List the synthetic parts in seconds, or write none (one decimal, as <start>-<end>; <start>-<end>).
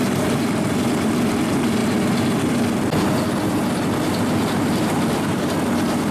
0.0-1.8; 4.2-6.1